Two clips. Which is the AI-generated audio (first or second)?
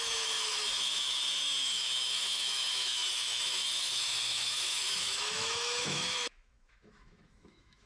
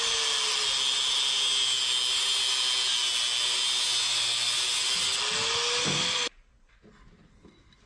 first